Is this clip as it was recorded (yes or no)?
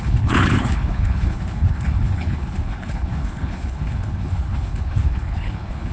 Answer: no